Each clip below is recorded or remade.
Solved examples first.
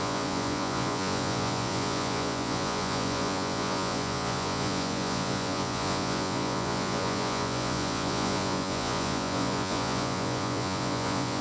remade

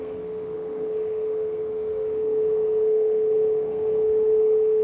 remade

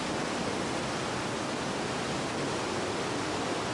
recorded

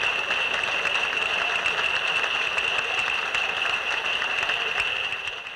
recorded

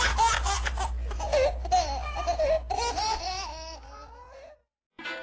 recorded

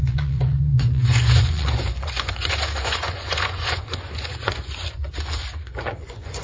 remade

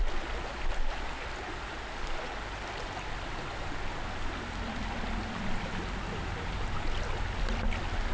recorded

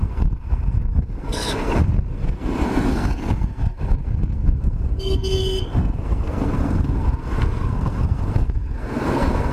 remade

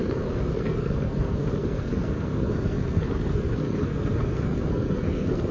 remade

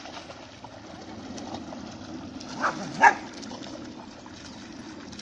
recorded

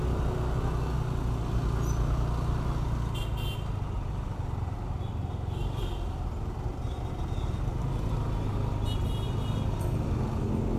recorded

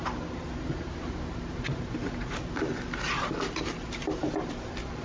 recorded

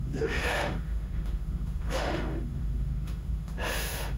remade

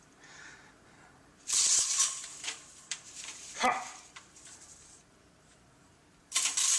remade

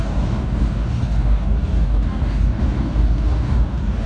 remade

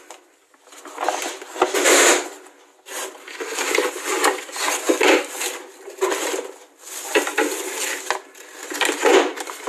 recorded